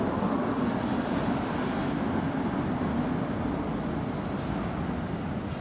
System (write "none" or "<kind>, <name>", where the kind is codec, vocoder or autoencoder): none